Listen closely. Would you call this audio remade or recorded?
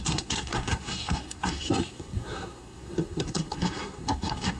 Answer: remade